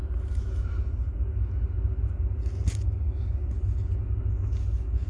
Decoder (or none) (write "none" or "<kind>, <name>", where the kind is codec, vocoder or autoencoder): none